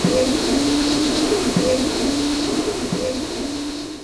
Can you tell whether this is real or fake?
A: fake